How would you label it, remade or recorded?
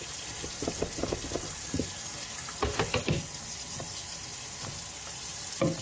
recorded